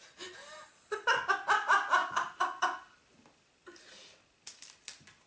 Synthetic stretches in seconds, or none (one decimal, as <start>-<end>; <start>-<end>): none